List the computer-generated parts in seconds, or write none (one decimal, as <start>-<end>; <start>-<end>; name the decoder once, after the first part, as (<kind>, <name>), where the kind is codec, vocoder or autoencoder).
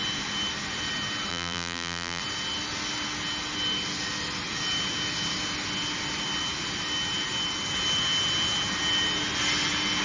1.3-2.2 (vocoder, BigVGAN v2)